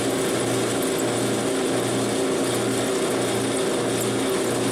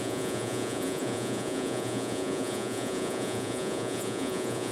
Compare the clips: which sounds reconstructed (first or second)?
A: second